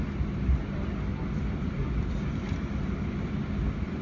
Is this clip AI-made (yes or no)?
no